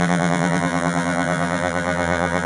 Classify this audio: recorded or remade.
remade